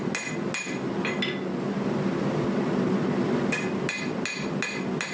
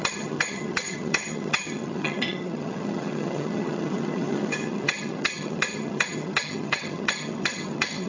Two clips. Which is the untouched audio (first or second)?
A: first